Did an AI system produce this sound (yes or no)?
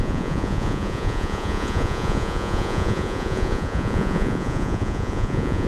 yes